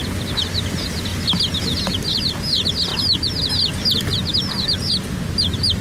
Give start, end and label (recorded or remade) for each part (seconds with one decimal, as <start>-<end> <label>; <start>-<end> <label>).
0.0-2.9 recorded; 2.9-3.5 remade; 3.5-4.3 recorded; 4.3-5.8 remade